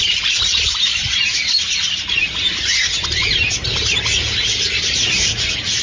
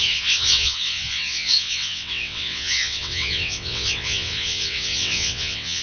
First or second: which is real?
first